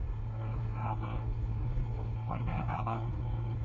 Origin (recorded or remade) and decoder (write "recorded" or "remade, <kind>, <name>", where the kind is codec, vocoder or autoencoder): remade, codec, SNAC